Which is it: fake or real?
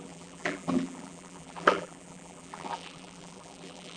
fake